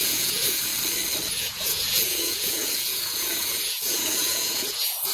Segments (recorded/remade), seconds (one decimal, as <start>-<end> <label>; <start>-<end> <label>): 0.0-0.7 remade; 0.7-1.3 recorded; 1.3-5.1 remade